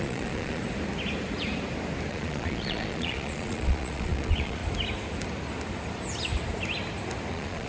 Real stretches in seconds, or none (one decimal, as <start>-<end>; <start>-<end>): 0.6-2.1; 4.6-7.3